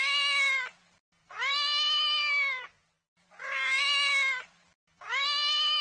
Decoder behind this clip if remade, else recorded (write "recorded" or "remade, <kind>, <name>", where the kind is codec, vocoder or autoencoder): recorded